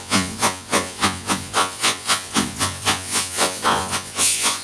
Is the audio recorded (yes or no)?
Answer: no